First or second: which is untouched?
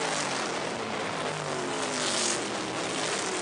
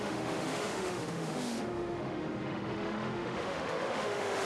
first